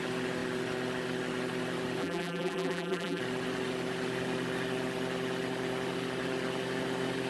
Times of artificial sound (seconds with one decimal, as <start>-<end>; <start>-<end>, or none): 2.0-3.2